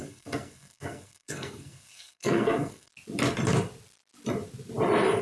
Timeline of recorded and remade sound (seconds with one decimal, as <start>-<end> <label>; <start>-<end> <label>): 0.0-2.9 remade; 2.9-5.2 recorded

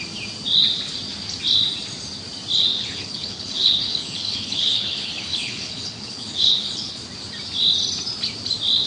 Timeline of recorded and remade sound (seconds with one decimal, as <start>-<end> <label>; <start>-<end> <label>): 0.0-2.7 recorded; 2.7-7.0 remade; 7.0-8.9 recorded

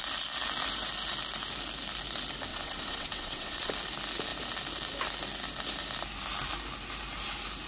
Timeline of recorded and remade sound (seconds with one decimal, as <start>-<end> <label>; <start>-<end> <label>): 0.0-2.5 recorded; 2.5-3.7 remade; 3.7-7.7 recorded

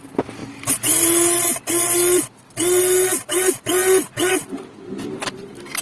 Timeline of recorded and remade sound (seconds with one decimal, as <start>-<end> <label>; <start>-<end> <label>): 0.0-5.8 recorded

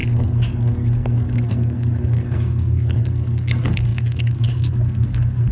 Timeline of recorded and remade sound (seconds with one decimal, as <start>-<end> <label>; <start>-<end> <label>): 0.0-5.5 remade

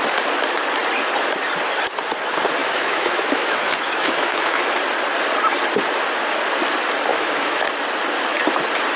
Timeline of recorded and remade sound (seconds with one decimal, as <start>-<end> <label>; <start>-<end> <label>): 0.0-2.6 recorded; 2.6-4.6 remade; 4.6-7.1 recorded; 7.1-7.6 remade; 7.6-9.0 recorded

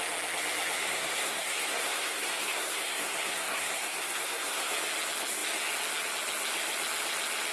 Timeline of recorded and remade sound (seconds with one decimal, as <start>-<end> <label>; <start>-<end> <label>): 0.0-0.8 recorded; 0.8-4.7 remade; 4.7-7.5 recorded